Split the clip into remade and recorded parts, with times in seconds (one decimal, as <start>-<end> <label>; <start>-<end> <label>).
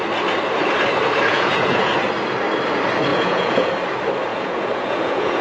0.0-1.3 recorded; 1.3-1.9 remade; 1.9-3.1 recorded; 3.1-3.7 remade; 3.7-4.3 recorded; 4.3-5.4 remade